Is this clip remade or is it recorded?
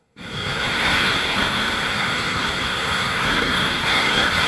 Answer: remade